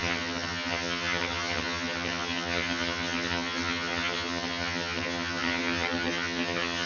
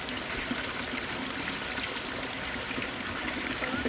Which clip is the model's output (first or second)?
first